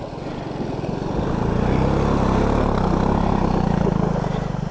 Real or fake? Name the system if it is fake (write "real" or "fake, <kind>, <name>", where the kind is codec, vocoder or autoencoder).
real